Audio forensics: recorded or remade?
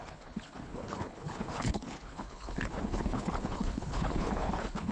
remade